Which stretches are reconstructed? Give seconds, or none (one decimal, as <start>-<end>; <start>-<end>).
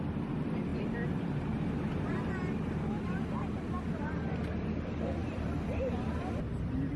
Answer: 5.2-5.9